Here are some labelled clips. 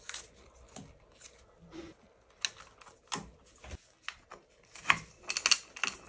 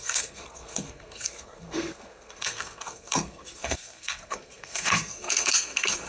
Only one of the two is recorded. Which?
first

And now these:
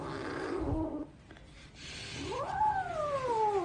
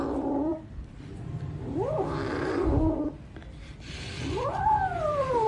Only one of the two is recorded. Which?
first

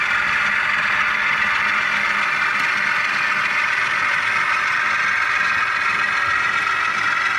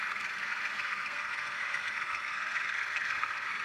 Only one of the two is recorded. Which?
first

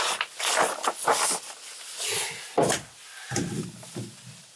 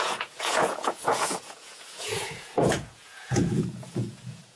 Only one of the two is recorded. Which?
first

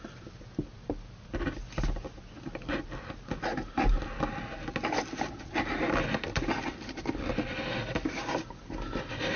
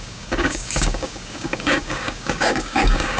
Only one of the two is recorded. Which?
first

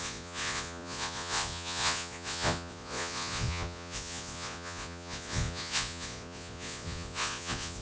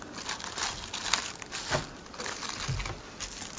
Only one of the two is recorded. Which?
second